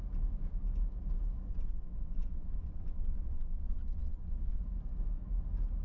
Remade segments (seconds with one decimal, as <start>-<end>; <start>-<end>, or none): 1.5-4.6